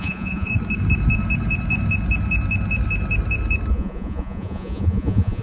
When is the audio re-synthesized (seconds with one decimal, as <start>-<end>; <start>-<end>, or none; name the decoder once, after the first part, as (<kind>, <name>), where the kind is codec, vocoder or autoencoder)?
0.0-0.5 (vocoder, Vocos); 3.7-5.4